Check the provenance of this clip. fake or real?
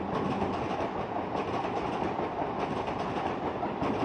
real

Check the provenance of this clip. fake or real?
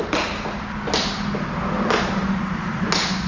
real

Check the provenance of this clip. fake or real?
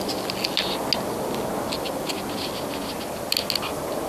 real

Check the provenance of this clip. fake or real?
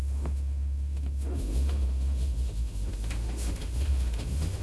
fake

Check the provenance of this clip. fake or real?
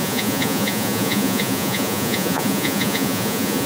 fake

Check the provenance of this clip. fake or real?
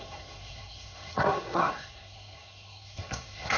fake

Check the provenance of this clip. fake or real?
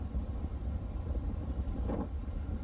fake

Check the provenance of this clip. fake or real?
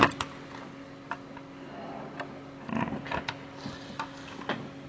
fake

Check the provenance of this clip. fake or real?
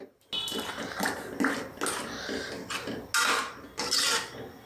real